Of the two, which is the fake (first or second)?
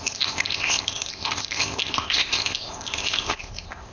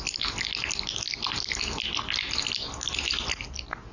first